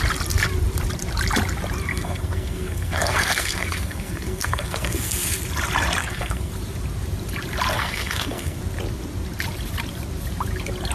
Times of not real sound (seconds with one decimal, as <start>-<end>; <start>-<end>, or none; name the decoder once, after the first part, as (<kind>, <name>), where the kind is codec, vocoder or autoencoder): 1.9-5.4 (codec, SNAC); 6.0-6.5; 7.7-8.6